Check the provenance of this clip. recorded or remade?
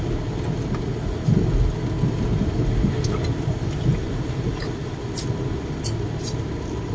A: recorded